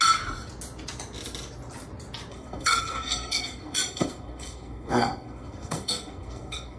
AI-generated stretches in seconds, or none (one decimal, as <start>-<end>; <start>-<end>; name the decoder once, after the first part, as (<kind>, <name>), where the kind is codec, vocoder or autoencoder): 2.3-6.8 (codec, SNAC)